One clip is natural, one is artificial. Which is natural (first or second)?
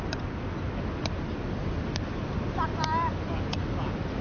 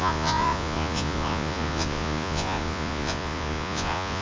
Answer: first